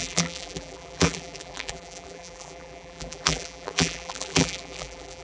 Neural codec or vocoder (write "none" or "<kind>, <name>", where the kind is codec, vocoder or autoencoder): vocoder, BigVGAN v2